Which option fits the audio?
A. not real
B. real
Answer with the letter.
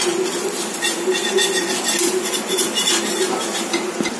B